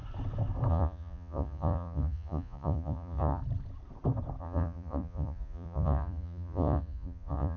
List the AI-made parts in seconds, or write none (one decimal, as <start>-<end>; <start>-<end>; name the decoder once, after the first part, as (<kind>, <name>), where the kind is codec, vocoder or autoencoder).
0.7-3.4 (vocoder, Vocos); 4.4-7.6